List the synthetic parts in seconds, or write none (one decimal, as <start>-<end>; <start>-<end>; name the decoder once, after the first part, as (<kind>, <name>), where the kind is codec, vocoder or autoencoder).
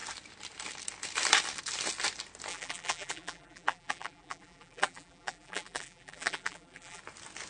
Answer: 2.5-7.0 (vocoder, BigVGAN v2)